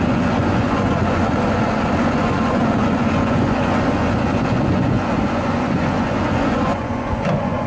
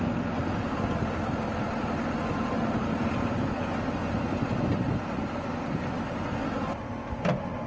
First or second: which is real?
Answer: second